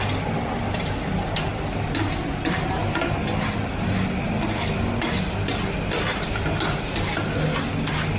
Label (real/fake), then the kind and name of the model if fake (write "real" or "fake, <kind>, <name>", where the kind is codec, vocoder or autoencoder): real